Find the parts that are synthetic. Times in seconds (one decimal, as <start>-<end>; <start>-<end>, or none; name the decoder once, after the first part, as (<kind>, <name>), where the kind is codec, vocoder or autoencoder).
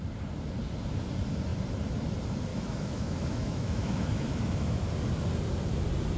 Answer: 2.5-4.9 (autoencoder, DAC-VAE)